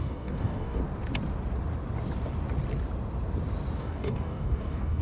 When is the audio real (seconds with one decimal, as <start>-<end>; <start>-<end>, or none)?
0.8-3.8